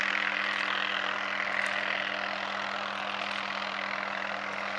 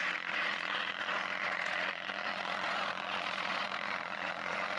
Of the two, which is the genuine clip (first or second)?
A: first